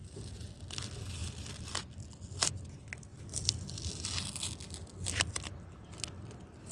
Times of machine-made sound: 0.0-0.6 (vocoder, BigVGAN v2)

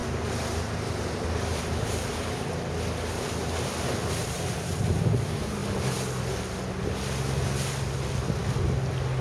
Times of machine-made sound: 0.0-2.7 (vocoder, BigVGAN v2); 4.2-4.8

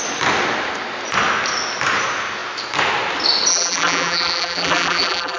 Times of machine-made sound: 3.5-5.4 (vocoder, BigVGAN v2)

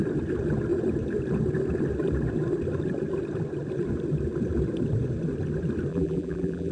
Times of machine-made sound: 5.9-6.7 (vocoder, BigVGAN v2)

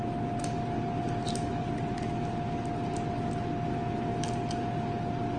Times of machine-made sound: 1.5-2.0 (vocoder, BigVGAN v2)